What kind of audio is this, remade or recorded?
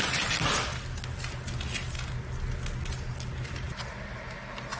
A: recorded